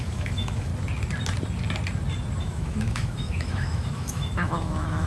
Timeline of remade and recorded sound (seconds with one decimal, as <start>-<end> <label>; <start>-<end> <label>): 0.0-0.7 remade; 0.7-2.4 recorded; 2.4-5.1 remade